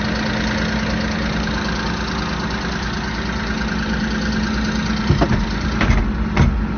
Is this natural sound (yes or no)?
yes